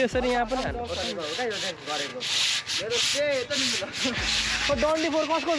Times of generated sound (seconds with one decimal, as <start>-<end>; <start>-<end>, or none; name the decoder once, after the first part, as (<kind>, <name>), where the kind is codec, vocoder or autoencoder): none